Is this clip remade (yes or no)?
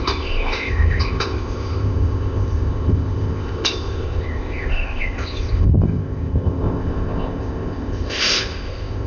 yes